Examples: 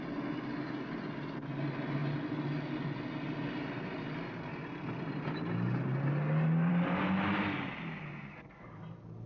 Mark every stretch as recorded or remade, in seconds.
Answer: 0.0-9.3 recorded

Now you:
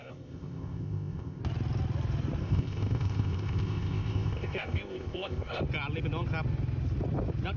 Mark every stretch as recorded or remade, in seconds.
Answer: 0.0-1.4 remade; 1.4-2.4 recorded; 2.4-5.6 remade; 5.6-7.6 recorded